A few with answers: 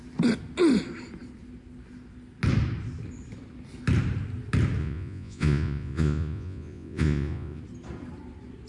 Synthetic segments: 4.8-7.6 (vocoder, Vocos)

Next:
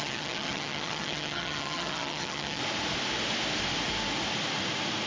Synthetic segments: 0.0-2.6 (vocoder, HiFi-GAN)

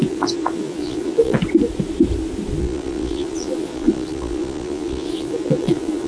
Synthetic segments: 0.0-1.4 (vocoder, Vocos); 2.6-6.1

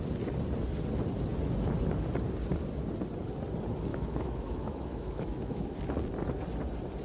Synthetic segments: 3.9-5.7 (autoencoder, DAC-VAE)

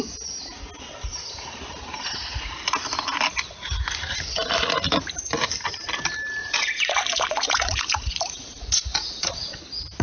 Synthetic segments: 6.4-9.6 (vocoder, Vocos)